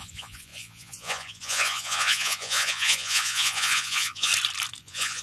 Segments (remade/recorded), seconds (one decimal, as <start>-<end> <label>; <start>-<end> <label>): 0.0-4.3 remade; 4.3-4.8 recorded; 4.8-5.2 remade

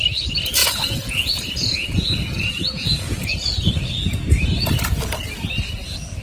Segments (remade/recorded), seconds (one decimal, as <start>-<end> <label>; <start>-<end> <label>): 0.0-0.6 recorded; 0.6-4.3 remade; 4.3-6.2 recorded

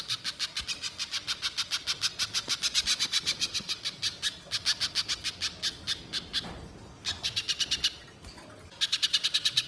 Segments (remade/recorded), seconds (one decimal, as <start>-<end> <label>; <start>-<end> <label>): 0.0-2.9 recorded; 2.9-3.7 remade; 3.7-9.7 recorded

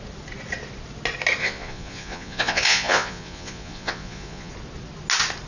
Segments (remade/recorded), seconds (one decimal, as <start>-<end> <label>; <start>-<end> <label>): 0.0-1.4 recorded; 1.4-4.5 remade; 4.5-5.5 recorded

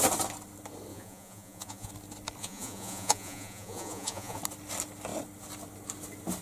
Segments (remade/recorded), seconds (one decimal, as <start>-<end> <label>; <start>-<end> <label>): 0.0-0.9 recorded; 0.9-1.9 remade; 1.9-2.4 recorded; 2.4-4.4 remade; 4.4-6.4 recorded